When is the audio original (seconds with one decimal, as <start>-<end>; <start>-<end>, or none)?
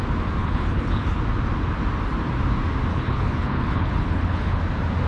0.0-0.4; 1.2-2.9; 4.6-5.1